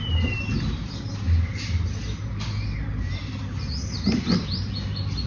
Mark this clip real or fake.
real